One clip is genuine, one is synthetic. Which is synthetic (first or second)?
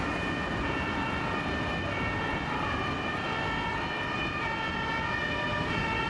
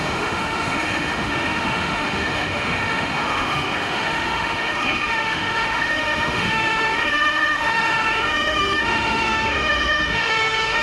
second